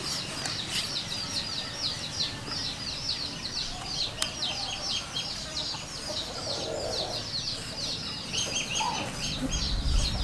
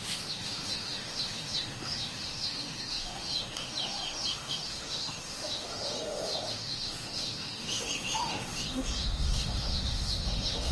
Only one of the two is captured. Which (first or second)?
first